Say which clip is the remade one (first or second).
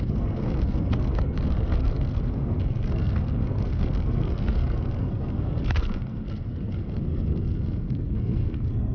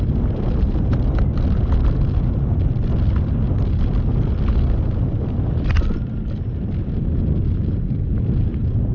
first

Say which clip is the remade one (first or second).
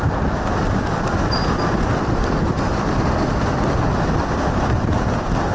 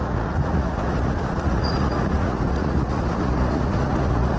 second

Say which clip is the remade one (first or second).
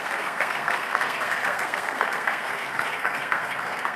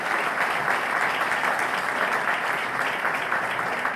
first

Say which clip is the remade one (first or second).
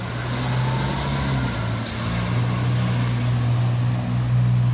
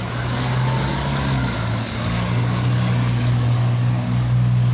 second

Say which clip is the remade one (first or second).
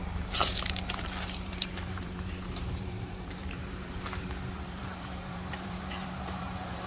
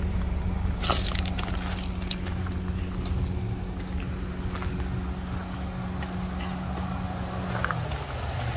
first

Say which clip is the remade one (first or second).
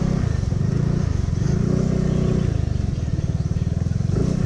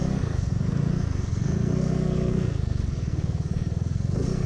second